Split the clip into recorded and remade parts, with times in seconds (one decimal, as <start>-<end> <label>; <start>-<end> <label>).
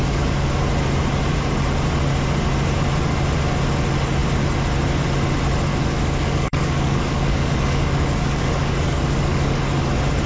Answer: 0.0-0.5 remade; 0.5-5.7 recorded; 5.7-9.9 remade; 9.9-10.3 recorded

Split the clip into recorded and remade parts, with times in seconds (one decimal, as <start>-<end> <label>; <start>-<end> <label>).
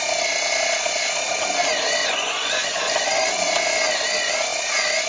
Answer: 0.0-2.0 recorded; 2.0-2.8 remade; 2.8-5.1 recorded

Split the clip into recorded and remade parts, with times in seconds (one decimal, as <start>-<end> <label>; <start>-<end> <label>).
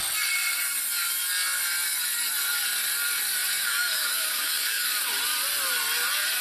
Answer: 0.0-3.6 recorded; 3.6-5.1 remade; 5.1-6.4 recorded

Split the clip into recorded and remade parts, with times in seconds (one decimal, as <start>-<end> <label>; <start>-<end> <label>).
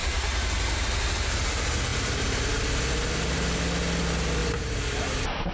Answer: 0.0-1.9 recorded; 1.9-3.6 remade; 3.6-4.4 recorded; 4.4-5.5 remade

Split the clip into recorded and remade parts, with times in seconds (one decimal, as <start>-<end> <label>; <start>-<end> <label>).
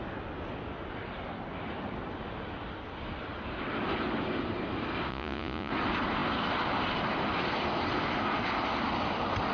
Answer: 0.0-5.1 recorded; 5.1-5.7 remade; 5.7-9.5 recorded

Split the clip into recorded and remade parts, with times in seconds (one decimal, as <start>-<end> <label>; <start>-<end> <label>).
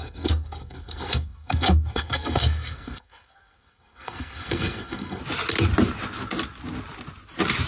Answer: 0.0-5.2 remade; 5.2-7.7 recorded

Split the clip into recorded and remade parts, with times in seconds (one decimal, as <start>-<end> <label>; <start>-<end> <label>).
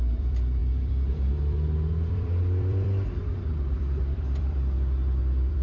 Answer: 0.0-5.6 remade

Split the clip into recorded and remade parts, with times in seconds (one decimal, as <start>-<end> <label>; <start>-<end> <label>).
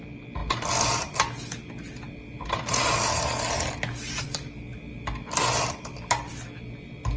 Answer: 0.0-7.2 recorded